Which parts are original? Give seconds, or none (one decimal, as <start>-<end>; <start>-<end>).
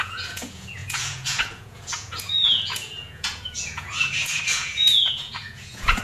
none